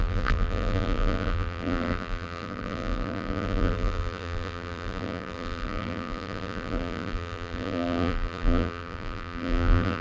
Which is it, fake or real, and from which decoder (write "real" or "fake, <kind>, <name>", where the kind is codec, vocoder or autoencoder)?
fake, vocoder, BigVGAN v2